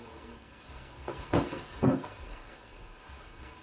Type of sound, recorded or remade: remade